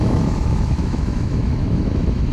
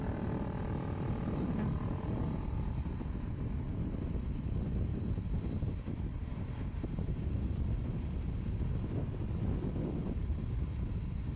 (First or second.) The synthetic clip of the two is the first